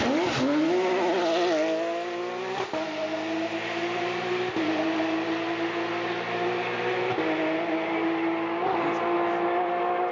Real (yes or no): yes